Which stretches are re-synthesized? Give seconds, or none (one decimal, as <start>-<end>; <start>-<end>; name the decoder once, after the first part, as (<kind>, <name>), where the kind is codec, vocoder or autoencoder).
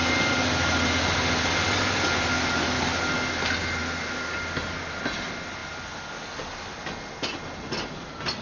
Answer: none